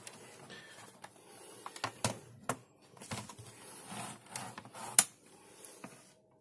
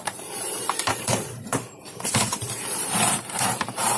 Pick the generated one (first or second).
second